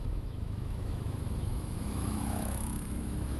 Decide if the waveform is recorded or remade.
remade